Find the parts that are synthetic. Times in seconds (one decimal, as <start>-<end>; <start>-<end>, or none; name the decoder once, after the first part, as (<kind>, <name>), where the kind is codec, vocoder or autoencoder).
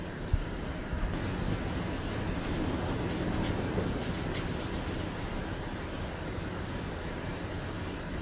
none